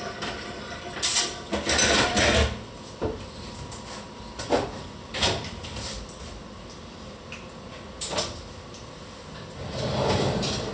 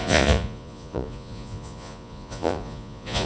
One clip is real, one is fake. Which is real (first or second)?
first